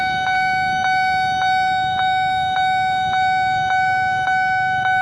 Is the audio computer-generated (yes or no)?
no